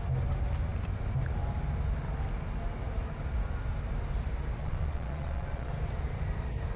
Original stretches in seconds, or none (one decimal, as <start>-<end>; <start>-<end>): 0.0-4.6; 5.7-6.8